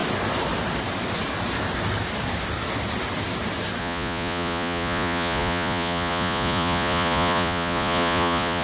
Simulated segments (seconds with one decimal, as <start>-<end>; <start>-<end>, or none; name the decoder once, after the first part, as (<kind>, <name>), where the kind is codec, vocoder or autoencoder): 3.8-8.6 (vocoder, Vocos)